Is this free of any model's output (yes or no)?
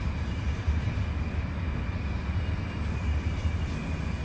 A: yes